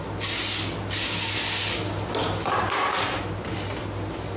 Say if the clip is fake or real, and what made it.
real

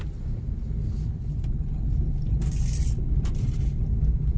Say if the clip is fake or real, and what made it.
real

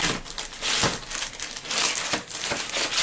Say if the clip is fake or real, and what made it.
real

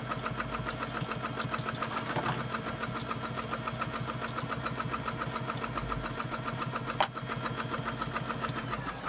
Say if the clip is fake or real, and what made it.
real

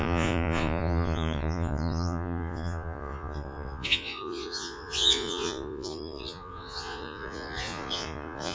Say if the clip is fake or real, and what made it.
fake, vocoder, Vocos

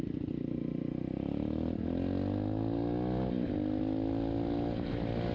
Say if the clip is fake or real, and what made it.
real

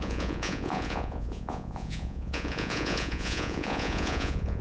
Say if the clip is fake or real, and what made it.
fake, vocoder, Vocos